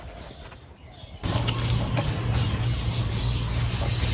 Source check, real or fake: real